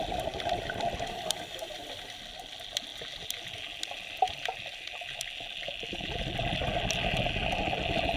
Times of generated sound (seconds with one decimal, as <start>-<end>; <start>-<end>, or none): none